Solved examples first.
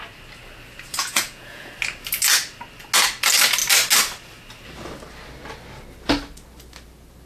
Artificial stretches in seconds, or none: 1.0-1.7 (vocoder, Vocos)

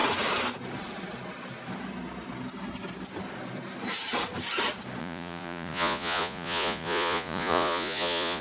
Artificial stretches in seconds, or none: 5.0-8.4 (vocoder, Vocos)

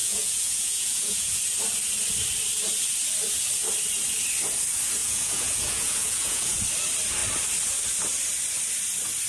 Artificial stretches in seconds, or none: 0.0-1.4 (vocoder, Vocos); 5.0-6.6

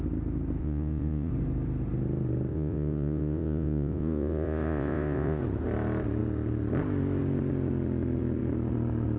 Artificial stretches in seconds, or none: 0.6-1.3 (vocoder, Vocos); 2.5-5.4

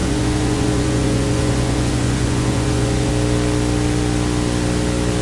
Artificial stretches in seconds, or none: 0.0-3.1 (vocoder, Vocos)